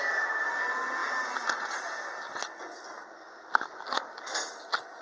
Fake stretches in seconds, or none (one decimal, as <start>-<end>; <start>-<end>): none